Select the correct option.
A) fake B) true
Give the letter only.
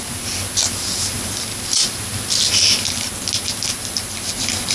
B